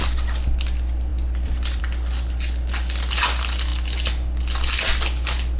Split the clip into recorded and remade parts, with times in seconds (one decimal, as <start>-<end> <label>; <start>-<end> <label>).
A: 0.0-5.6 recorded